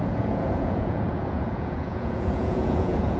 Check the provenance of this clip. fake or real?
fake